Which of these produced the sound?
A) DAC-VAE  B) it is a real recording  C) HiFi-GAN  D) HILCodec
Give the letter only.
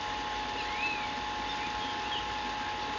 B